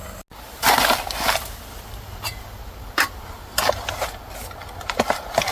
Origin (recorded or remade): recorded